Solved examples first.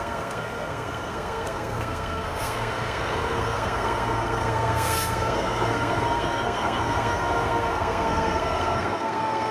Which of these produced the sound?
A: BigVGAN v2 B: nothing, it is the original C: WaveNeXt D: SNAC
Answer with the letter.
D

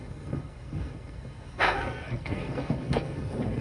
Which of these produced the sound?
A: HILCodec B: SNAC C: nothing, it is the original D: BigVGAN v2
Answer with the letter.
B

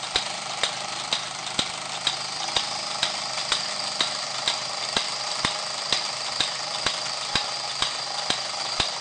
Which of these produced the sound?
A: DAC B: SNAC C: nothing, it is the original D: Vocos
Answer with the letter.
C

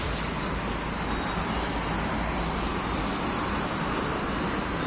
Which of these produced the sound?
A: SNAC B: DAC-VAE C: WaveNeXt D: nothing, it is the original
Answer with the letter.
D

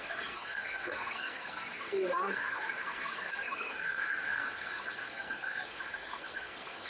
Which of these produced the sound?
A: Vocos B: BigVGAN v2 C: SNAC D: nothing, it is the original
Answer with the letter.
C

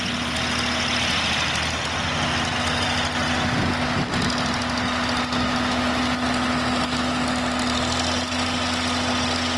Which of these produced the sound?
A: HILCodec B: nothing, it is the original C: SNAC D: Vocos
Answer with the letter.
B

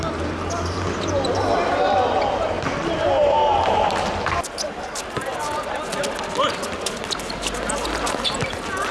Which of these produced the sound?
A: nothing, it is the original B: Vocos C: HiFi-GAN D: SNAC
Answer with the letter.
A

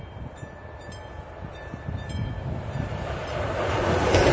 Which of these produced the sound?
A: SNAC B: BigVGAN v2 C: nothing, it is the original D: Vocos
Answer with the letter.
C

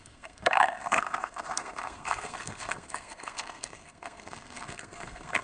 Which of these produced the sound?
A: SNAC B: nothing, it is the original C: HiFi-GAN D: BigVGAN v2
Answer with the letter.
A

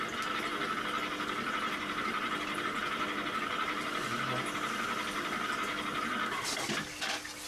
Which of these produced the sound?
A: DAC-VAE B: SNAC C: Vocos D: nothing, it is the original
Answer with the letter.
D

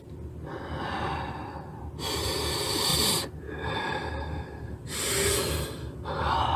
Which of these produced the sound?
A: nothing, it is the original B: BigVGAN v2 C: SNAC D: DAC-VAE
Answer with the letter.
A